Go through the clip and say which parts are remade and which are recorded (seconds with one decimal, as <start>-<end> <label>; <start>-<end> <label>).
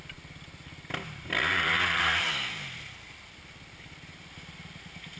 0.0-1.5 recorded; 1.5-2.3 remade; 2.3-5.2 recorded